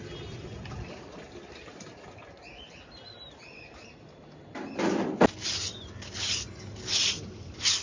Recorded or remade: recorded